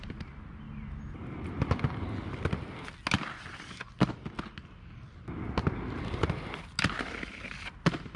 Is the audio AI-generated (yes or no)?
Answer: no